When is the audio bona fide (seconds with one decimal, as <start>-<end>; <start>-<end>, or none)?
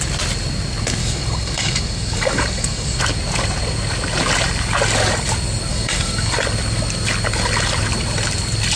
0.0-1.0; 3.0-5.7; 6.3-8.7